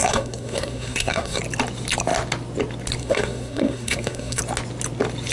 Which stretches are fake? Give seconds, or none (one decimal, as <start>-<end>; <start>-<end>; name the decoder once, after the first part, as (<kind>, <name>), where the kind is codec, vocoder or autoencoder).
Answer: 0.0-1.4 (codec, SNAC); 3.0-4.4